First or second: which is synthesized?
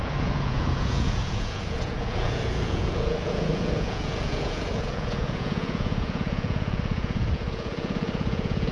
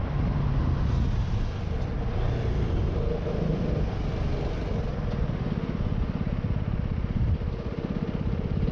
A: first